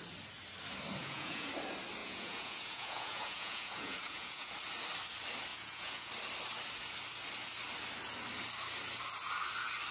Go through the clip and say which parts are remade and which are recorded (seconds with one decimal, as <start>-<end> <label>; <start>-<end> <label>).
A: 0.0-1.0 recorded; 1.0-1.5 remade; 1.5-2.0 recorded; 2.0-4.5 remade; 4.5-5.5 recorded; 5.5-6.1 remade; 6.1-9.9 recorded

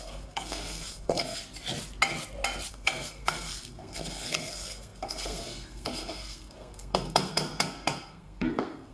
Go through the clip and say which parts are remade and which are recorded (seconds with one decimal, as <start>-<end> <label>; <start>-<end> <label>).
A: 0.0-1.4 remade; 1.4-2.7 recorded; 2.7-8.9 remade